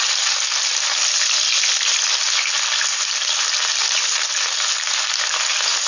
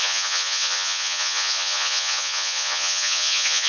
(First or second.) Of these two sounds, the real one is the first